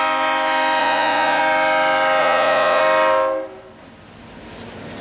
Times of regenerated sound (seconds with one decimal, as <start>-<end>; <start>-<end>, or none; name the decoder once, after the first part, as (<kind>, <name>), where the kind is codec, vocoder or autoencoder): 0.8-1.4 (vocoder, Vocos); 2.2-2.8